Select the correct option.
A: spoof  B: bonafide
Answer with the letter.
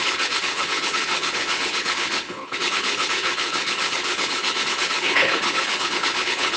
A